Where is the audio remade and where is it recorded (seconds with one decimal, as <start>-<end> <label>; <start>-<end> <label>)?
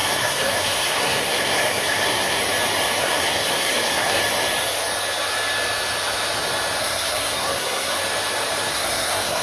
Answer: 0.0-2.4 remade; 2.4-3.0 recorded; 3.0-4.2 remade; 4.2-6.8 recorded; 6.8-8.0 remade; 8.0-8.7 recorded; 8.7-9.4 remade